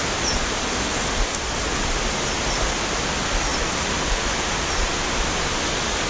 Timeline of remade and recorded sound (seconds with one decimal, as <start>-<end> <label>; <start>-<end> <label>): 0.0-6.1 recorded